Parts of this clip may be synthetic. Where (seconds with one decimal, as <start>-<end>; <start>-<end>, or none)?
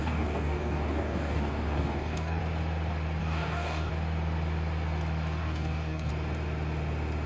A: 0.0-2.4; 3.2-3.9; 5.4-6.1